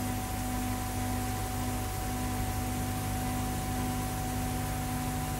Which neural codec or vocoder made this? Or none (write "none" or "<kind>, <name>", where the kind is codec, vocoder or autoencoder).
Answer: none